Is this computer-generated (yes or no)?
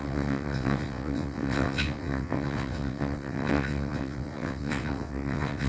yes